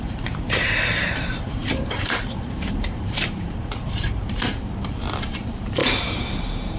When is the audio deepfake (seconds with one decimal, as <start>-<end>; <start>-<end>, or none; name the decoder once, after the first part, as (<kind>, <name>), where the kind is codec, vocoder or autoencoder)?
0.0-6.8 (vocoder, BigVGAN v2)